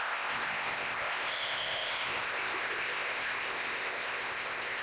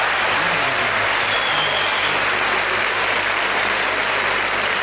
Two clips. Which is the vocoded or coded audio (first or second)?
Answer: first